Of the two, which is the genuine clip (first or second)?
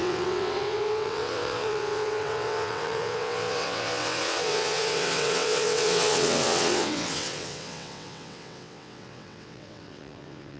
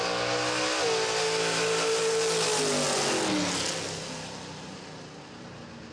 second